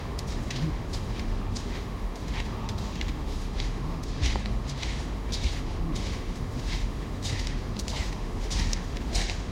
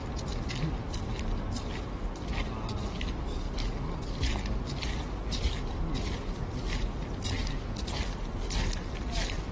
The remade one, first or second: first